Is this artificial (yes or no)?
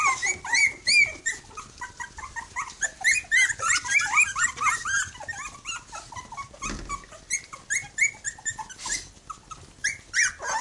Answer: no